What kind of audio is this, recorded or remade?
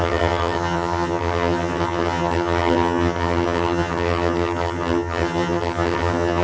remade